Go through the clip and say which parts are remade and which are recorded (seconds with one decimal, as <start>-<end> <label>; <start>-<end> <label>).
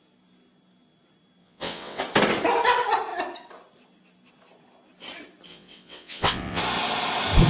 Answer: 0.0-1.4 recorded; 1.4-2.0 remade; 2.0-5.5 recorded; 5.5-6.6 remade; 6.6-7.5 recorded